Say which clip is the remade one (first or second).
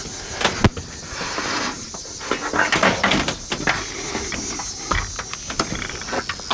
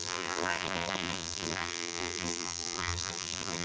second